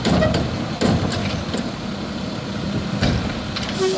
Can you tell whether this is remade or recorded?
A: recorded